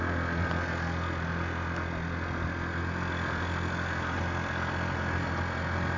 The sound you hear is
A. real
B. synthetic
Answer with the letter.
A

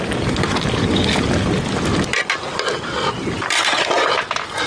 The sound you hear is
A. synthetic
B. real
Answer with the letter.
B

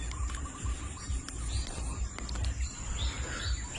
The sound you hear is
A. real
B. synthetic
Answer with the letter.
A